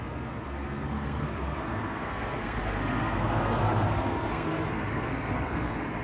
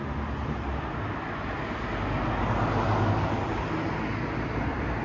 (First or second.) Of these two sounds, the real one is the second